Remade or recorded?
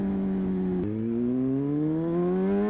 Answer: recorded